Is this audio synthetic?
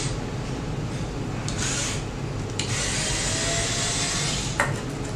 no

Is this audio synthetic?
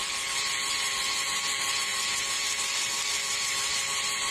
no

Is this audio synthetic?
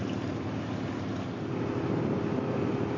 no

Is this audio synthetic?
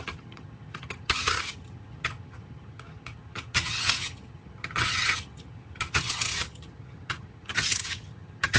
yes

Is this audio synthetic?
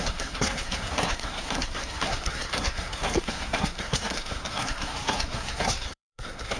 yes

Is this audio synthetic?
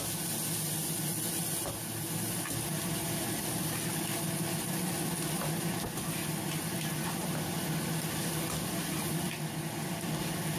no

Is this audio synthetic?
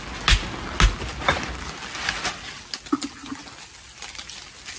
no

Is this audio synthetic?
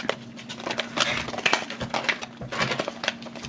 no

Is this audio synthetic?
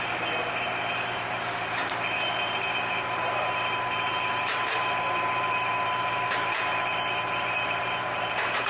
yes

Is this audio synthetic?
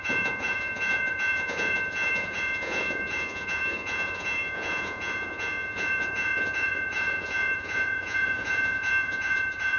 yes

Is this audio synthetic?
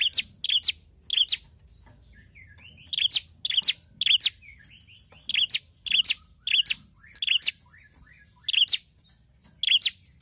no